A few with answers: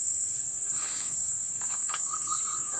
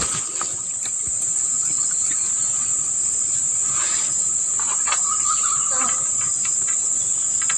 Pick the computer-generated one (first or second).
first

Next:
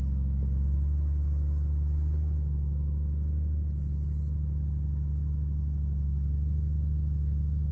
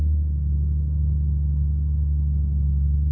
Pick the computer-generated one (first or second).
second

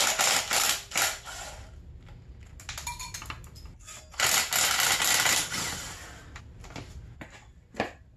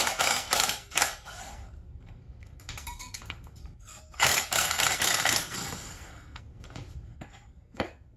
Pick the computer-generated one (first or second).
second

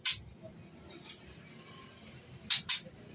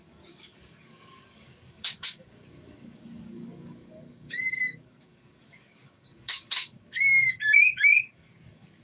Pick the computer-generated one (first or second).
second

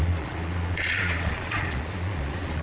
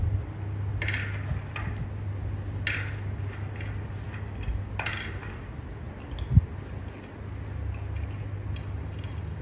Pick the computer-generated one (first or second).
first